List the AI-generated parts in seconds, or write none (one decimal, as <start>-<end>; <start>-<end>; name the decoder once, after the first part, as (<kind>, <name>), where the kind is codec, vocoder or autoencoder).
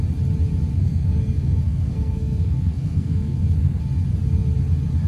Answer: 0.7-3.8 (codec, SNAC)